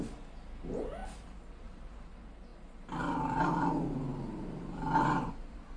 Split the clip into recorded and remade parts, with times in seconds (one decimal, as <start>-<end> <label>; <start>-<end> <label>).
0.0-5.8 recorded

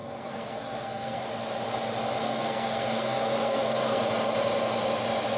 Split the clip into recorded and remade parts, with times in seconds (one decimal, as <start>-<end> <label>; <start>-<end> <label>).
0.0-1.3 remade; 1.3-2.2 recorded; 2.2-4.0 remade; 4.0-5.4 recorded

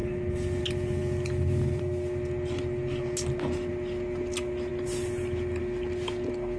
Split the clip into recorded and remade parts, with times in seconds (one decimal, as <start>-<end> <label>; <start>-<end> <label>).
0.0-0.6 remade; 0.6-6.6 recorded

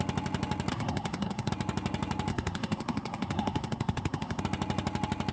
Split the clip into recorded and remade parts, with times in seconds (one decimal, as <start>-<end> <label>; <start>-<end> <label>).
0.0-0.7 recorded; 0.7-1.5 remade; 1.5-2.3 recorded; 2.3-4.4 remade; 4.4-5.3 recorded

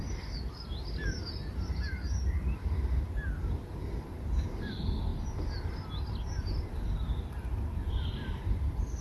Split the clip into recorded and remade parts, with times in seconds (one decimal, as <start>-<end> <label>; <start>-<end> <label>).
0.0-9.0 recorded

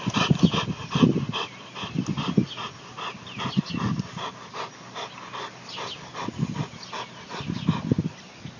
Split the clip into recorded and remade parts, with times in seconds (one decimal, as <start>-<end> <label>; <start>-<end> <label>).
0.0-8.6 recorded

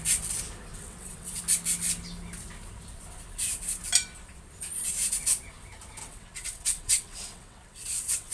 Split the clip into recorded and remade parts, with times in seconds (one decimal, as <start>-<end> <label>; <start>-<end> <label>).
0.0-0.7 recorded; 0.7-1.4 remade; 1.4-6.0 recorded; 6.0-8.3 remade

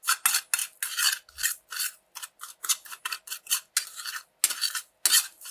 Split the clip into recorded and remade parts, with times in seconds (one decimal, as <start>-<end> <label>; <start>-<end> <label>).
0.0-2.4 recorded; 2.4-3.7 remade; 3.7-5.5 recorded